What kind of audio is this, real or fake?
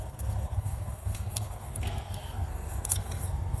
fake